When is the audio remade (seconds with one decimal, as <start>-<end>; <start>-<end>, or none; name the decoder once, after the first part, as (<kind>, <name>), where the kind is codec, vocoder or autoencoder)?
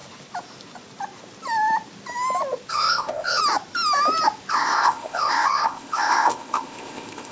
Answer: 2.7-3.4 (codec, ZipCodec); 4.5-7.3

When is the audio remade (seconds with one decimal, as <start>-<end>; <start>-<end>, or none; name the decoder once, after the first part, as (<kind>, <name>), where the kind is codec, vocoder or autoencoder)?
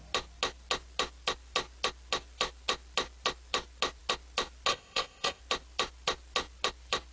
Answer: 4.7-5.4 (codec, ZipCodec)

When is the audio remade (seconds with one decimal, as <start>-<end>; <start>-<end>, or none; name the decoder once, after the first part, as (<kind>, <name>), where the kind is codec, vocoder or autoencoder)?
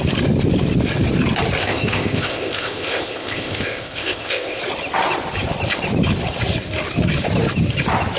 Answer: 1.6-4.6 (codec, ZipCodec)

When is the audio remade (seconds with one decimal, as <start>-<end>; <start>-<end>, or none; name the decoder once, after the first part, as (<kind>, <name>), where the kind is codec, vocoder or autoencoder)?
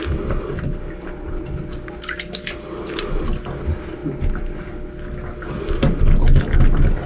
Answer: none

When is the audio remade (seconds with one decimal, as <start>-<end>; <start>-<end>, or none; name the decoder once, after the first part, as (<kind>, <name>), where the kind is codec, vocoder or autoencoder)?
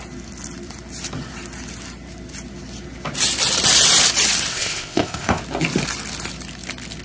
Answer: 4.5-5.4 (codec, ZipCodec)